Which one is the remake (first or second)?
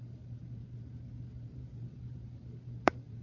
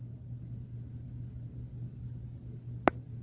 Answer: first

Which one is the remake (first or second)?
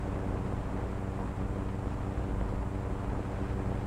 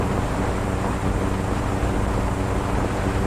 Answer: second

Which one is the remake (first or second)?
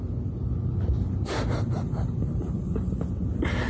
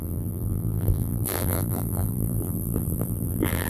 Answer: second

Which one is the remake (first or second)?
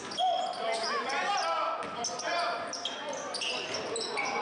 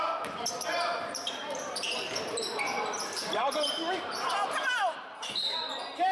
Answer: second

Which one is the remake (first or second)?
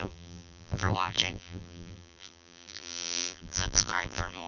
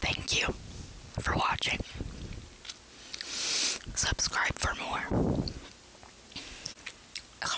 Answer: first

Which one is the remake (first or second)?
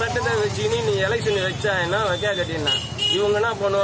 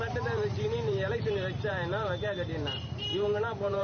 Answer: second